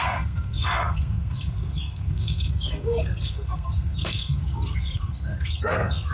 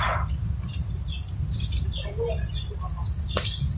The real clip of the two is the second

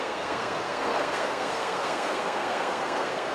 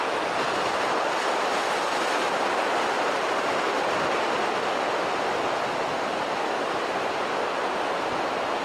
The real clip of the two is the second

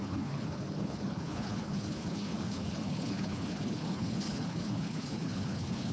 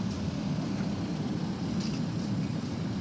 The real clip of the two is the second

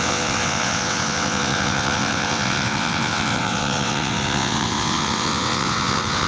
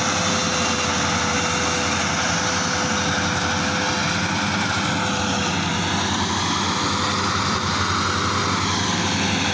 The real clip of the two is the second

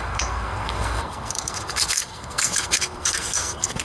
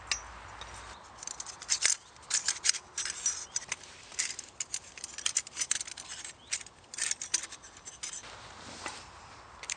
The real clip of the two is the second